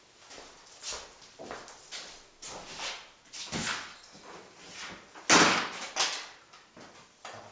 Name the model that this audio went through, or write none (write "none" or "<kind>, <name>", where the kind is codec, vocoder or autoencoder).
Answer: none